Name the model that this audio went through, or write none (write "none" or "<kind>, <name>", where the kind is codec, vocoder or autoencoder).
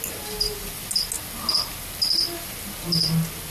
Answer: none